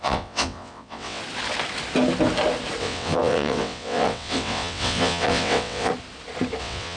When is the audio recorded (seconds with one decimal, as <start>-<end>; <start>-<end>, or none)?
1.2-2.8; 5.9-6.6